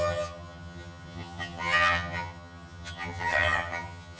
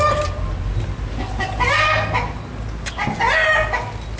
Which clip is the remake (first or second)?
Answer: first